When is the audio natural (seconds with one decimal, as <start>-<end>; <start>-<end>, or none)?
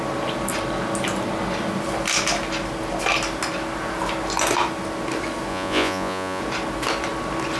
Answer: 0.0-5.5; 6.4-7.6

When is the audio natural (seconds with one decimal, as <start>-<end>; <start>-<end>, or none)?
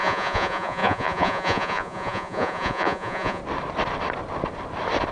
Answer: 3.4-5.1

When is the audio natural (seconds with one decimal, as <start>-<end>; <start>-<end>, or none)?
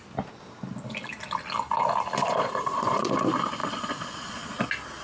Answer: 0.0-2.2; 3.1-3.6; 4.6-5.0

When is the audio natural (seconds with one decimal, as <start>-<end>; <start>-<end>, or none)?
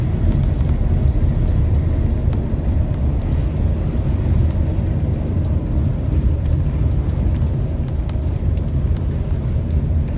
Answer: 0.0-10.2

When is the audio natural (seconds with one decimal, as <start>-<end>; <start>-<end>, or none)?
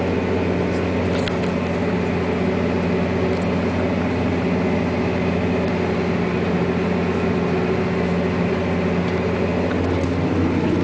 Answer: 0.0-10.8